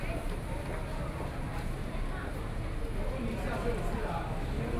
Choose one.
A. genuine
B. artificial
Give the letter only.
A